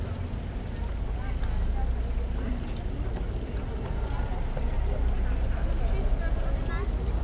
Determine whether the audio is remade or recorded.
recorded